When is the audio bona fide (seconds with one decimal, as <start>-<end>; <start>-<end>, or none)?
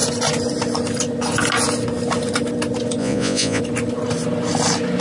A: 0.0-3.0; 3.6-5.0